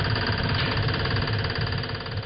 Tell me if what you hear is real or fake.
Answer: real